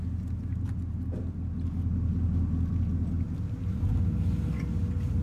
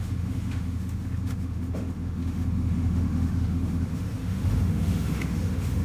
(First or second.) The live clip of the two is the first